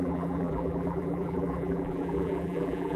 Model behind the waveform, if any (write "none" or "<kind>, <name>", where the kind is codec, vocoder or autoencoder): vocoder, BigVGAN v2